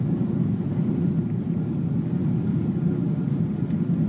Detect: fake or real real